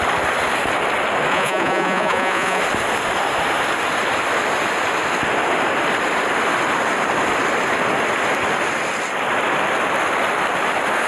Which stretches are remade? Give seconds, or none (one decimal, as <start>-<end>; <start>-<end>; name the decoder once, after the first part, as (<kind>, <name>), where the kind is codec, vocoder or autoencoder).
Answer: 1.3-2.6 (vocoder, Vocos)